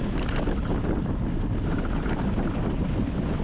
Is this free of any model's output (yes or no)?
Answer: yes